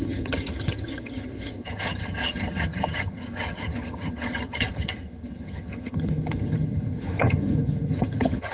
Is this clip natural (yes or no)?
no